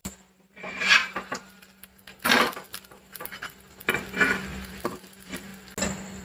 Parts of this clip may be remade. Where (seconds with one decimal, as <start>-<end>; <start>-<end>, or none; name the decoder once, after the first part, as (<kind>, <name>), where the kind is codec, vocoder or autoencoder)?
0.0-1.0 (vocoder, BigVGAN v2); 4.7-5.5